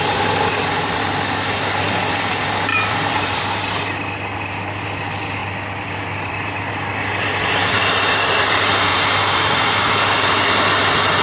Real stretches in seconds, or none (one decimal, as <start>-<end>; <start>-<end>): 0.0-2.7; 3.4-8.9; 9.9-11.2